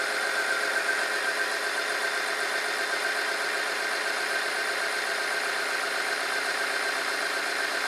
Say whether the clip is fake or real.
real